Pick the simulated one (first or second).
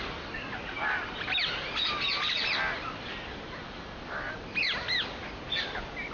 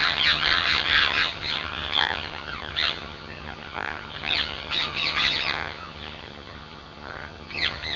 second